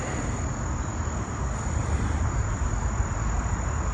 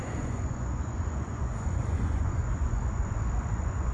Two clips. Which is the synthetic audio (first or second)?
second